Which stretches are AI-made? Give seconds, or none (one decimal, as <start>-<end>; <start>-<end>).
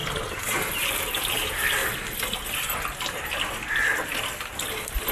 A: none